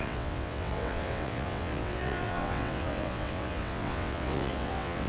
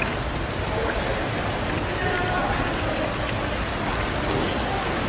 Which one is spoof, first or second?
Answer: first